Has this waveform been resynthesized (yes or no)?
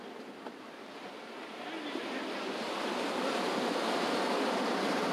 no